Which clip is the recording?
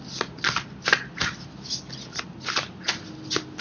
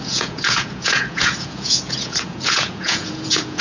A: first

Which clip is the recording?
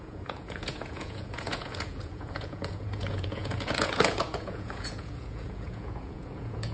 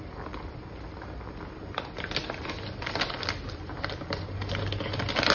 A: second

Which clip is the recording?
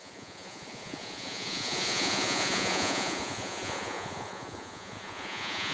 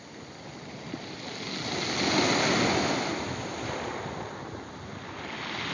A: second